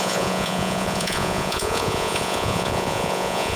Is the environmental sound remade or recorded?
remade